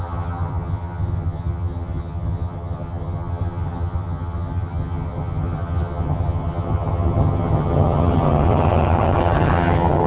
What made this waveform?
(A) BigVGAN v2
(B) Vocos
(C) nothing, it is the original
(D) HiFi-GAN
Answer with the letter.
D